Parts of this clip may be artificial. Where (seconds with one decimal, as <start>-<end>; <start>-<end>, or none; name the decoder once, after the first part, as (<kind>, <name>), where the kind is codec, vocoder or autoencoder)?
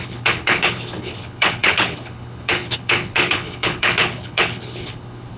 0.0-5.4 (codec, HILCodec)